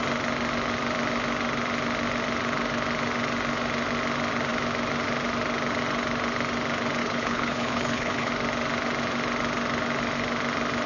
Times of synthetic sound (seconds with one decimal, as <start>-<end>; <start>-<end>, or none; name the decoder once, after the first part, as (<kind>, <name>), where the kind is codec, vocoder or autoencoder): 7.0-8.3 (codec, HILCodec)

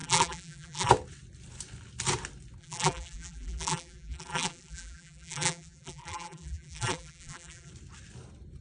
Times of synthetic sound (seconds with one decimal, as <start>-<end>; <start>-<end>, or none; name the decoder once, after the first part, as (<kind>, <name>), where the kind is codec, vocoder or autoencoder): 0.0-0.9 (vocoder, BigVGAN v2); 2.6-7.7

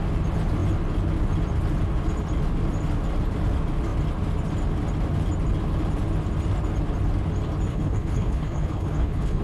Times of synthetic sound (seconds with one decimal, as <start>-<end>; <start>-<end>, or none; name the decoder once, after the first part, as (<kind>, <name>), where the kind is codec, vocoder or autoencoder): 7.7-9.4 (codec, HILCodec)

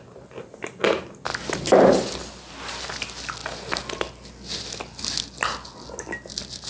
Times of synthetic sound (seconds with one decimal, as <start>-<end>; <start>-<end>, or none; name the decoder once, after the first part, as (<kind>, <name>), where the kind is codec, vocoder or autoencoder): 1.3-2.2 (vocoder, BigVGAN v2)

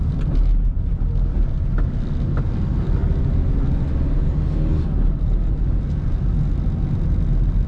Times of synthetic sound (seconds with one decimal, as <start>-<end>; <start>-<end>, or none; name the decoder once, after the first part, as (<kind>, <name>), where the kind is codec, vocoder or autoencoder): none

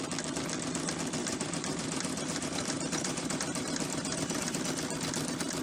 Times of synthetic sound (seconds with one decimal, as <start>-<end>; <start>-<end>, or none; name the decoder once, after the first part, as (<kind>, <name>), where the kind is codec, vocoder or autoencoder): 1.2-4.6 (vocoder, BigVGAN v2)

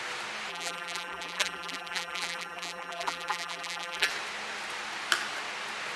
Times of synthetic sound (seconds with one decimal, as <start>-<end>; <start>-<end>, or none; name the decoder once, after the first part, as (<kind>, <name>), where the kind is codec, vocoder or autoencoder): 0.5-4.1 (vocoder, BigVGAN v2)

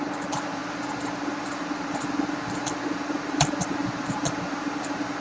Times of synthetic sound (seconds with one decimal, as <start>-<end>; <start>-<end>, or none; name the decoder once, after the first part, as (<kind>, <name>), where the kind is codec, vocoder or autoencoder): 0.0-5.2 (vocoder, BigVGAN v2)